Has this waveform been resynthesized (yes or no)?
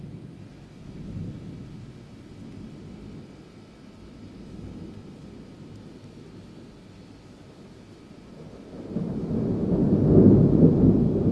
no